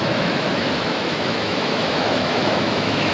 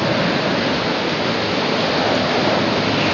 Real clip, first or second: second